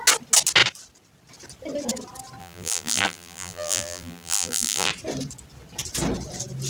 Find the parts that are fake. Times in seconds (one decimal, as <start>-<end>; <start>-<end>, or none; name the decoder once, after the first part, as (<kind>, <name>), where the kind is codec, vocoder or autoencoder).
2.4-4.9 (vocoder, BigVGAN v2)

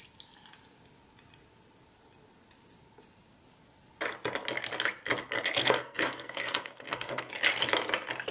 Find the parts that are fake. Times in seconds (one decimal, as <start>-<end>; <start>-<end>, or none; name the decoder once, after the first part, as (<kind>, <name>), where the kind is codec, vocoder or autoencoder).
5.6-7.3 (codec, SNAC)

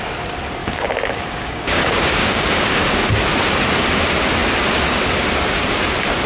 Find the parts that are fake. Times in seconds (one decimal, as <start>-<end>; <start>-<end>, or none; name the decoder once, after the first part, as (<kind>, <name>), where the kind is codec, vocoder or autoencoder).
0.6-2.9 (codec, DAC)

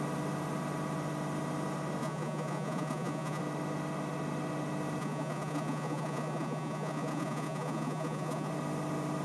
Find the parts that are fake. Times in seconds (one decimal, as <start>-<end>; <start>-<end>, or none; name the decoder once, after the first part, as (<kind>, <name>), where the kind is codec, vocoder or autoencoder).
2.0-3.4 (vocoder, Vocos); 5.0-8.5

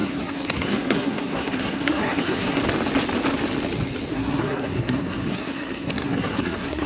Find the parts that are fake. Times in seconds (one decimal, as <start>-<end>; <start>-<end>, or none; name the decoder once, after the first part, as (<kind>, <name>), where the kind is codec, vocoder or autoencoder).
0.0-2.6 (codec, SNAC); 4.1-6.9

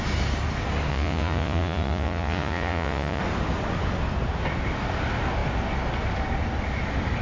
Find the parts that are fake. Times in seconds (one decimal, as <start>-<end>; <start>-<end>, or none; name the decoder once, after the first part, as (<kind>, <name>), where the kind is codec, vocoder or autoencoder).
0.9-3.2 (vocoder, Vocos)

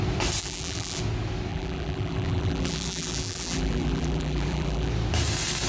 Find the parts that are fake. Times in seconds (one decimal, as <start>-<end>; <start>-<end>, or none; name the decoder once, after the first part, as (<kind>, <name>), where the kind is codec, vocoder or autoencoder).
0.4-1.0 (vocoder, BigVGAN v2); 1.5-4.9

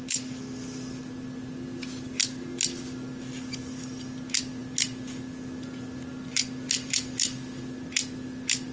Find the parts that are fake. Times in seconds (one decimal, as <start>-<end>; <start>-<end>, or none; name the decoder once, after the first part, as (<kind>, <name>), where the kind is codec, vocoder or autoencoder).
none